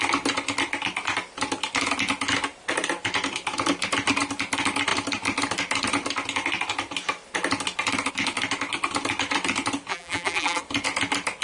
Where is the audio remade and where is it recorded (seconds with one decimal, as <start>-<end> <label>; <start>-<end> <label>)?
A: 0.0-9.9 recorded; 9.9-10.6 remade; 10.6-11.4 recorded